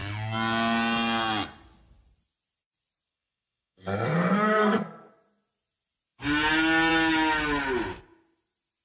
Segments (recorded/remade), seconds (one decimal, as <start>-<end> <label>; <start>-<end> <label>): 0.0-3.1 recorded; 3.1-5.1 remade; 5.1-8.8 recorded